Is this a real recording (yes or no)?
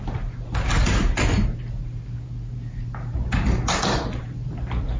yes